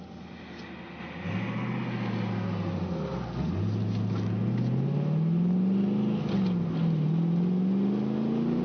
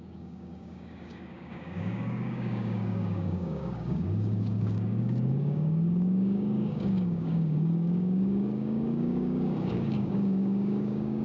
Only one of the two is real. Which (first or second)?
first